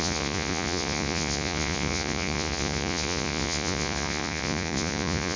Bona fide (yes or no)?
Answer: no